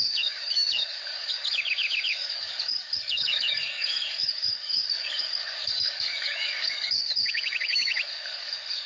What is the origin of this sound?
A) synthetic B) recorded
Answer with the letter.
A